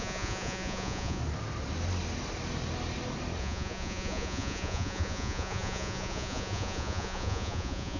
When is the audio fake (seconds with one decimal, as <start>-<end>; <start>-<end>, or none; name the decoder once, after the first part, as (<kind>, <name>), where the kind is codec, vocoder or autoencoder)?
0.0-1.2 (vocoder, Vocos); 3.4-8.0